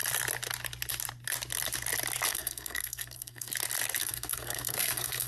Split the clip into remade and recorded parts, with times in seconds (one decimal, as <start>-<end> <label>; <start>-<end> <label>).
0.0-2.3 recorded; 2.3-3.5 remade; 3.5-4.0 recorded; 4.0-5.3 remade